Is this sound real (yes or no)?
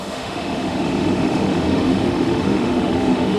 no